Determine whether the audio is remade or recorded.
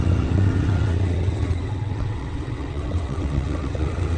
remade